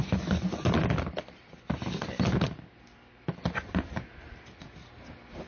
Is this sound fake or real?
real